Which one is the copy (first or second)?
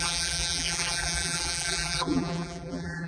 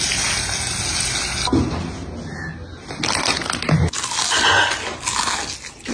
first